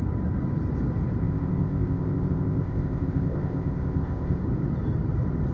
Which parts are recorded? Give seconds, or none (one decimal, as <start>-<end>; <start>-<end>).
0.0-1.2; 4.4-5.5